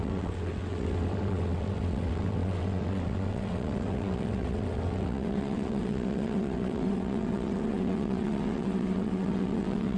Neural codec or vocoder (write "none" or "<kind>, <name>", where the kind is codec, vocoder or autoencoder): vocoder, WaveNeXt